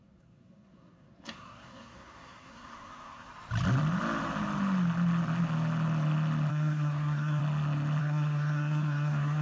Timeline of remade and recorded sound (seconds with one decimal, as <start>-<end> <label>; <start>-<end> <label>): 0.0-3.3 remade; 3.3-6.5 recorded; 6.5-7.4 remade; 7.4-8.0 recorded; 8.0-9.4 remade